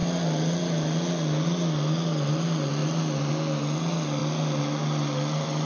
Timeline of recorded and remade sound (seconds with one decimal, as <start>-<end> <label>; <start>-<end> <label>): 0.0-2.8 recorded; 2.8-3.3 remade; 3.3-4.2 recorded; 4.2-5.7 remade